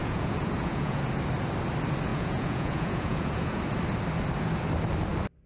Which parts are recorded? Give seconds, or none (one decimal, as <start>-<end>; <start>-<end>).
1.0-2.1; 3.6-5.5